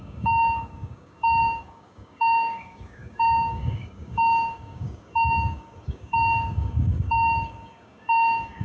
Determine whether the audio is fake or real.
fake